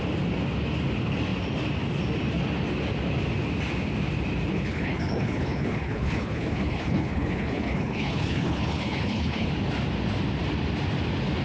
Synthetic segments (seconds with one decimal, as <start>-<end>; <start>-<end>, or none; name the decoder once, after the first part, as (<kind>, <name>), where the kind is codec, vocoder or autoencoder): 4.5-9.5 (codec, HILCodec)

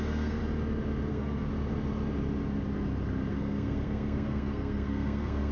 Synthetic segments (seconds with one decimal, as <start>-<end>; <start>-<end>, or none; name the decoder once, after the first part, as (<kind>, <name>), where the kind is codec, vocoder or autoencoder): 0.0-0.4 (codec, SNAC); 1.1-1.5; 3.3-5.5

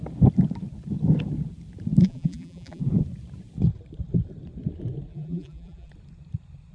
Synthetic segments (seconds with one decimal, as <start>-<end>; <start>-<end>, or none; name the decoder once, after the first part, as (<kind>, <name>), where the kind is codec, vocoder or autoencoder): 2.0-2.8 (vocoder, BigVGAN v2); 5.1-5.9

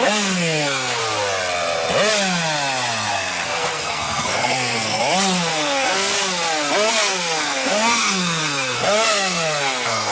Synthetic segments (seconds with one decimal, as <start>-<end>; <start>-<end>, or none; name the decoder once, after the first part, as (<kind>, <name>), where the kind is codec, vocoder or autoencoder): 0.0-1.0 (codec, SNAC); 3.1-5.0; 5.5-6.1; 6.9-10.1

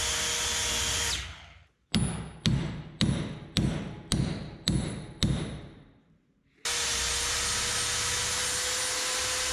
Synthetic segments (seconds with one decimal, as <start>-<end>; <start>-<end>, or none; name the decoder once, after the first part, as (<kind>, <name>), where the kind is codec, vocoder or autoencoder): none

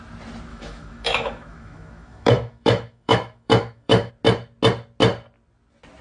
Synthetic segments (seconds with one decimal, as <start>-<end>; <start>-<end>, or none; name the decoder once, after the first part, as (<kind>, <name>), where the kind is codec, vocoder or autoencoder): 0.5-4.1 (autoencoder, DAC-VAE)

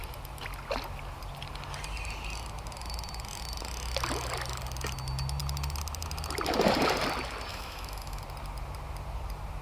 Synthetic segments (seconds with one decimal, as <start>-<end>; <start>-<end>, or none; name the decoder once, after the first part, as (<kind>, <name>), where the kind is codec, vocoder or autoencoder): 7.5-8.2 (autoencoder, DAC-VAE)

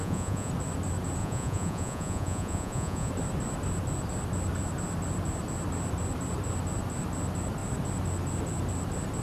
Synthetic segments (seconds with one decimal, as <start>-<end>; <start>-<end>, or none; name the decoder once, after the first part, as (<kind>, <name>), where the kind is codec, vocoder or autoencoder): 0.0-0.5 (vocoder, Vocos); 1.2-3.1